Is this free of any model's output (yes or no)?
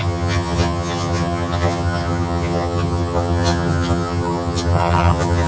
no